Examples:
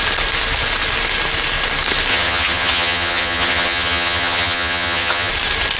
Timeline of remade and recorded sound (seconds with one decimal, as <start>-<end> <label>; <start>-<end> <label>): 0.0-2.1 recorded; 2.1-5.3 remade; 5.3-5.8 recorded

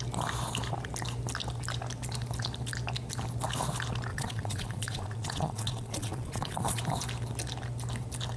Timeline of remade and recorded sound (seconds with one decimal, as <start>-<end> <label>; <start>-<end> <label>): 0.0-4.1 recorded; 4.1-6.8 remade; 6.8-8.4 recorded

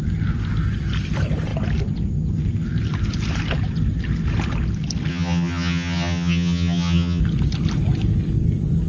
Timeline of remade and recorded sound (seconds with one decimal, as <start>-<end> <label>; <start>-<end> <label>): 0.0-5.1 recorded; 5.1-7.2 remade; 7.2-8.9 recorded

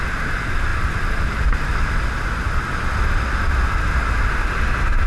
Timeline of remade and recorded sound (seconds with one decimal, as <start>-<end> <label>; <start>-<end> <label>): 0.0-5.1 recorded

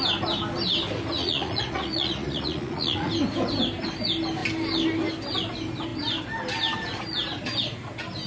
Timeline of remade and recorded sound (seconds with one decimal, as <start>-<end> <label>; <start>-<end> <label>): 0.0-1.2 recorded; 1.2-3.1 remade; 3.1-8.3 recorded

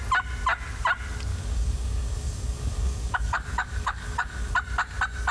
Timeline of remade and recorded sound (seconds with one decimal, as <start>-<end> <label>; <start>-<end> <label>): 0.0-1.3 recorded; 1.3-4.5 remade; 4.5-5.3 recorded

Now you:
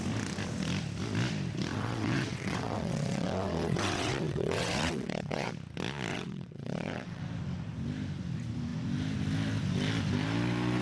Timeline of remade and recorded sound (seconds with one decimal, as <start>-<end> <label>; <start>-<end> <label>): 0.0-1.7 recorded; 1.7-5.5 remade; 5.5-6.1 recorded; 6.1-7.2 remade; 7.2-10.8 recorded

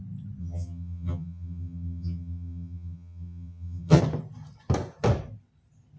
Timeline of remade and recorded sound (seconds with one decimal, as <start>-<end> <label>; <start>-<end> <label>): 0.0-0.4 recorded; 0.4-4.0 remade; 4.0-6.0 recorded